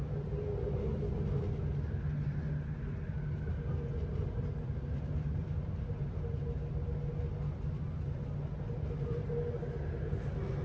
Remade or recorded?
recorded